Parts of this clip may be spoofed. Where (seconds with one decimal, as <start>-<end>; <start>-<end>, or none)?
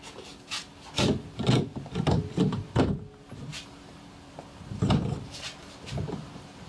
1.6-3.0; 3.5-6.7